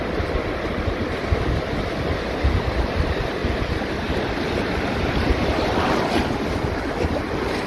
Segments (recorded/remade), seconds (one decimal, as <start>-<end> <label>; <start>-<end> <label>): 0.0-7.7 recorded